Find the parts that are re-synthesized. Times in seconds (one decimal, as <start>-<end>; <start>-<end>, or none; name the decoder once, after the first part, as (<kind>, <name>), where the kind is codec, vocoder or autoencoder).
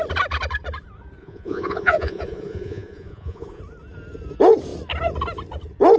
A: 1.2-3.6 (vocoder, Vocos)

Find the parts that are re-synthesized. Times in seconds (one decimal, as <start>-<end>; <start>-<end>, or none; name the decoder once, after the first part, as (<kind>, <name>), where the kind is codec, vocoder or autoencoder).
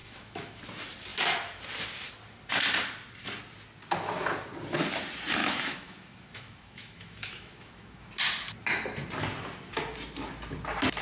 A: 0.0-0.6 (autoencoder, DAC-VAE); 5.4-8.1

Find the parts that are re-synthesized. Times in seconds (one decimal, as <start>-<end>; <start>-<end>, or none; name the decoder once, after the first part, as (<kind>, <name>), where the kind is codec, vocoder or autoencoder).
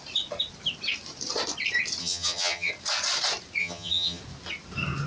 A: 2.0-2.7 (vocoder, HiFi-GAN); 3.6-4.2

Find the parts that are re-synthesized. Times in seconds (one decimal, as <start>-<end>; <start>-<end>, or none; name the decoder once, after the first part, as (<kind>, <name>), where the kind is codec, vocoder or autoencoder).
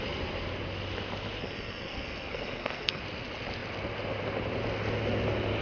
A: 1.4-3.0 (codec, SNAC)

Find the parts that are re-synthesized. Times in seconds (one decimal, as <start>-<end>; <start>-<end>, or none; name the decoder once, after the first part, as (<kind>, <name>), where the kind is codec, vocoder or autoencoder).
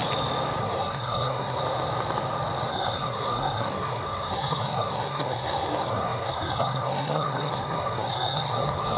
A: 0.6-1.6 (codec, SNAC); 2.7-9.0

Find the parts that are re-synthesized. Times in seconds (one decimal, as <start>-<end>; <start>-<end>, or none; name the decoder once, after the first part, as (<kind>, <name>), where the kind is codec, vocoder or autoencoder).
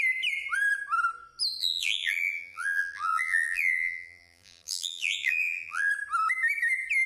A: 1.6-5.9 (vocoder, BigVGAN v2)